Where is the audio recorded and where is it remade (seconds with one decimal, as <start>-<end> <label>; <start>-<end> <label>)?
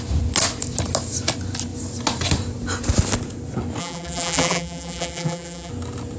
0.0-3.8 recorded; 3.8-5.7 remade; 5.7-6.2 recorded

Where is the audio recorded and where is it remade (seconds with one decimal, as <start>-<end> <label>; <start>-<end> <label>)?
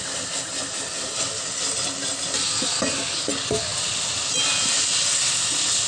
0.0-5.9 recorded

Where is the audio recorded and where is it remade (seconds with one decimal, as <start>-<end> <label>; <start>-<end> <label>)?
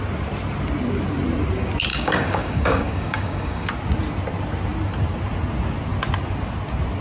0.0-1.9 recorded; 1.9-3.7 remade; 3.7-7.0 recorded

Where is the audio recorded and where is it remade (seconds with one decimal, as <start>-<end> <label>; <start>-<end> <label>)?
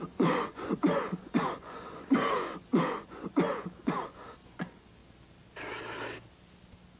0.0-5.0 remade; 5.0-7.0 recorded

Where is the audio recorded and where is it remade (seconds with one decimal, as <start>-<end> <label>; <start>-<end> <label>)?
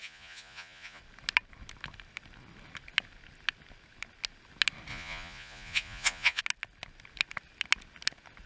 0.0-1.0 remade; 1.0-4.9 recorded; 4.9-6.4 remade; 6.4-8.5 recorded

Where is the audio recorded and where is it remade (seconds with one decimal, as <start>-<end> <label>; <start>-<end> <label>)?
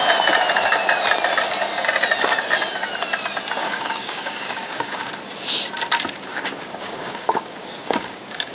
0.0-3.6 recorded; 3.6-5.1 remade; 5.1-6.3 recorded; 6.3-8.5 remade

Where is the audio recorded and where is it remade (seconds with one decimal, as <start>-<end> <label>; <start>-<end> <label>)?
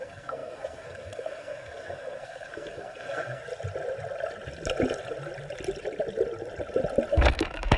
0.0-3.4 remade; 3.4-7.1 recorded; 7.1-7.8 remade